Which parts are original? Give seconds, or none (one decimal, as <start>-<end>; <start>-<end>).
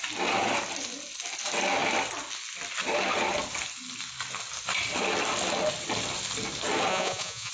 0.0-6.9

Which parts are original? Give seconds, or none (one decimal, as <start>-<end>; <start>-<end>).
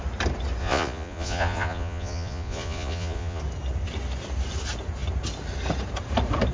0.0-0.6; 3.4-6.5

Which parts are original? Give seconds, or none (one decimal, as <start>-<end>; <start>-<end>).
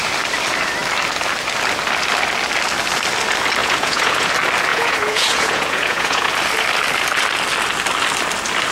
0.0-3.6; 4.3-4.7; 6.3-8.7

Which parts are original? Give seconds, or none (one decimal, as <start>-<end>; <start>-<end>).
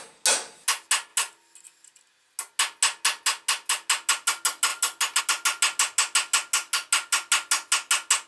0.0-8.3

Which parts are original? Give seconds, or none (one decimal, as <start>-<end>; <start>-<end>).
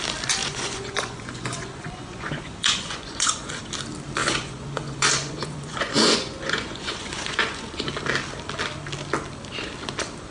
0.0-0.4; 3.5-4.2; 7.9-10.3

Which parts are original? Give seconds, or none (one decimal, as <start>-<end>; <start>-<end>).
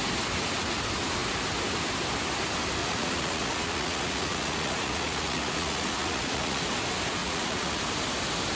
0.0-2.8; 6.6-7.2; 7.8-8.6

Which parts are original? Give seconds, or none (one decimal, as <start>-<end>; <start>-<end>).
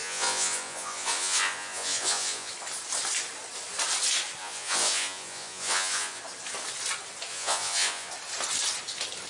2.5-4.4; 6.2-7.3; 8.1-9.3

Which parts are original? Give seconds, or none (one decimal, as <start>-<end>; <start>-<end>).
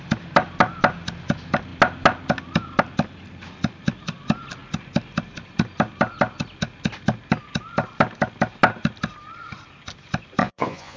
0.0-10.4